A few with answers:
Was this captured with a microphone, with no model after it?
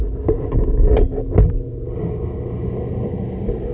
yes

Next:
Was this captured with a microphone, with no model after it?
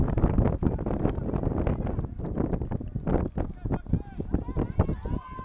yes